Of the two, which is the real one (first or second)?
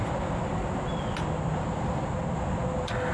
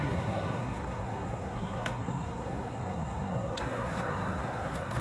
first